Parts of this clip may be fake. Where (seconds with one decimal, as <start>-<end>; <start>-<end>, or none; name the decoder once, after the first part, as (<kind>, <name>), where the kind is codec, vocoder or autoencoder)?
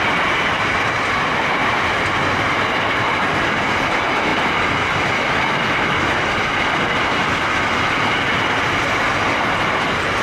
4.3-6.3 (vocoder, BigVGAN v2)